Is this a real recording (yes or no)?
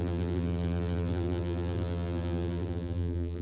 no